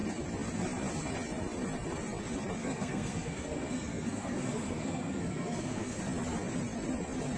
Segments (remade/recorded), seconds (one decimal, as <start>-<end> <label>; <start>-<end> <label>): 0.0-2.6 recorded; 2.6-6.0 remade; 6.0-7.4 recorded